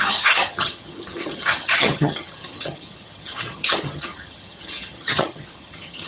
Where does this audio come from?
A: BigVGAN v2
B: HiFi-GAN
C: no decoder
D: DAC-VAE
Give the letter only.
B